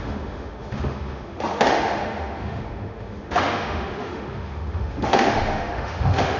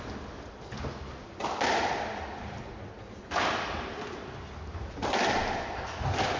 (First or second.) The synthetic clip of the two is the first